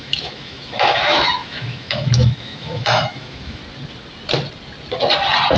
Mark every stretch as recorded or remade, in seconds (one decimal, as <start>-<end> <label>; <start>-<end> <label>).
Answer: 0.0-3.6 remade; 3.6-5.6 recorded